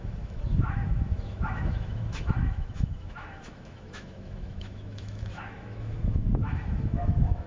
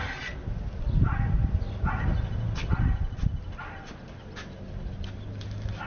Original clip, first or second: second